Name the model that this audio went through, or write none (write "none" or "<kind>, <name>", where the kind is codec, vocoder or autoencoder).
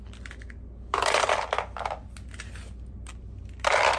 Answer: none